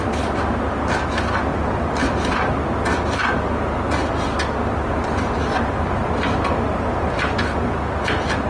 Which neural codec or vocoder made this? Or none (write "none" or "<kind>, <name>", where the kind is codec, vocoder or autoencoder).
none